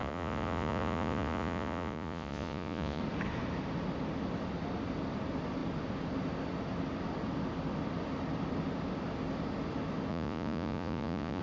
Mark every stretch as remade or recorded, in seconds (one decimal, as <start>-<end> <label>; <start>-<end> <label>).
0.0-3.0 remade; 3.0-10.1 recorded; 10.1-11.4 remade